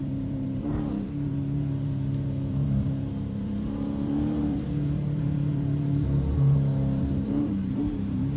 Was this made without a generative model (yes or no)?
no